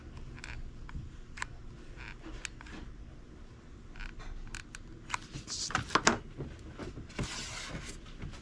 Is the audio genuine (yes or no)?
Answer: yes